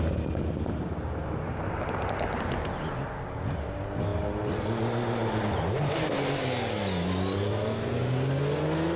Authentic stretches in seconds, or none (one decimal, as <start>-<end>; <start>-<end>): 0.0-9.0